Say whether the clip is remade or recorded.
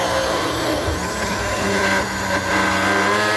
recorded